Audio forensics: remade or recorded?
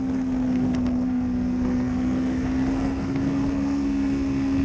remade